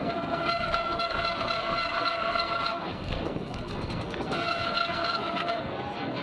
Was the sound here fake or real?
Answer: fake